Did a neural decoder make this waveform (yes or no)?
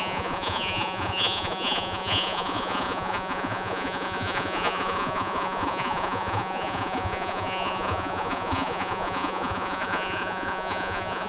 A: yes